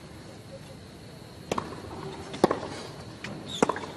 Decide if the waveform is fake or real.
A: real